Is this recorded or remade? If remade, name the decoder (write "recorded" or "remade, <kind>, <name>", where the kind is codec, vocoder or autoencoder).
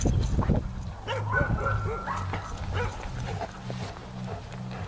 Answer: recorded